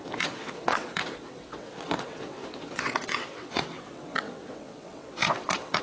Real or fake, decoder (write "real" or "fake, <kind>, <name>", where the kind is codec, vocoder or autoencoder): fake, vocoder, WaveNeXt